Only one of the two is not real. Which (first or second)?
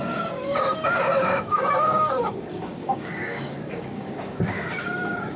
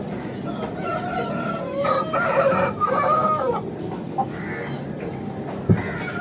first